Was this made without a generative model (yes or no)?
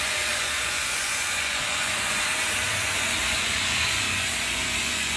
no